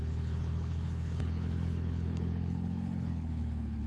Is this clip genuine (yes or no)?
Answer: no